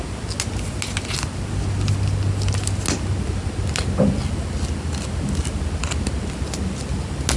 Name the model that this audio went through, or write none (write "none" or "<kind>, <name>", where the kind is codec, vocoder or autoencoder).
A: none